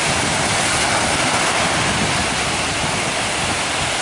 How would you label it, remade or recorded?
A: recorded